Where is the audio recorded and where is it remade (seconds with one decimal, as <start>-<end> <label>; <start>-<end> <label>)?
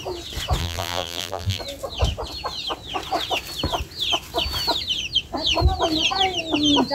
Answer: 0.0-0.6 recorded; 0.6-1.6 remade; 1.6-6.9 recorded